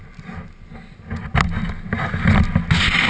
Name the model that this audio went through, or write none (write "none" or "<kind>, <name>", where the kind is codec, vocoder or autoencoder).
none